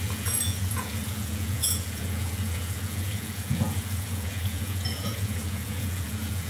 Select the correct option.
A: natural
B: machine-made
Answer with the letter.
B